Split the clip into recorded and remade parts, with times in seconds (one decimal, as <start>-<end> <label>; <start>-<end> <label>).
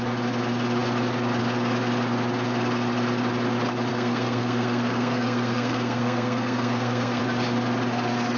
0.0-3.9 recorded; 3.9-7.2 remade; 7.2-8.4 recorded